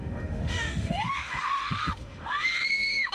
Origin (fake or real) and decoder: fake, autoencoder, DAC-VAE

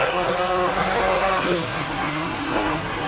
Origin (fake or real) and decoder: fake, codec, SNAC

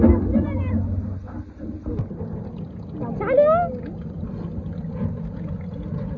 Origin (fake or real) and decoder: real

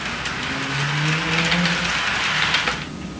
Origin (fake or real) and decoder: real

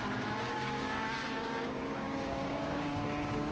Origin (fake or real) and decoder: fake, codec, DAC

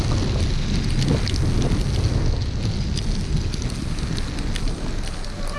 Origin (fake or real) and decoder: real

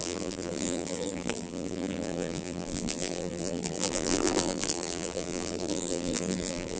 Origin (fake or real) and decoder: fake, vocoder, BigVGAN v2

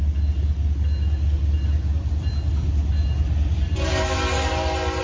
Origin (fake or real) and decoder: real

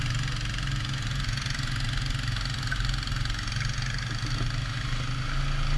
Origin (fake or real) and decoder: real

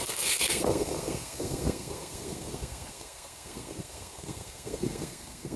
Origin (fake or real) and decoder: fake, codec, SNAC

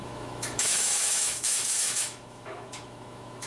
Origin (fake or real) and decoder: fake, autoencoder, DAC-VAE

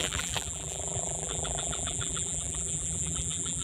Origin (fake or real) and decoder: fake, vocoder, BigVGAN v2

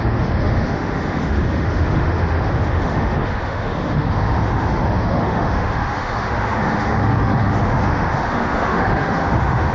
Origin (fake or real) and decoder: fake, autoencoder, DAC-VAE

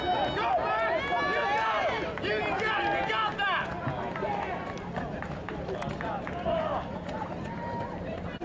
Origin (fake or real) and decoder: real